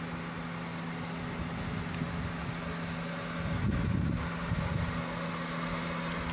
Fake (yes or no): no